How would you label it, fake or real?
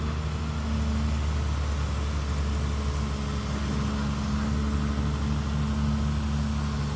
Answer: real